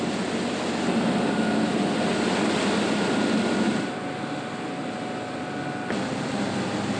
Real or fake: real